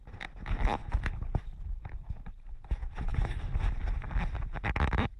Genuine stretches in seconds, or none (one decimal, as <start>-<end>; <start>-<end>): 0.0-5.2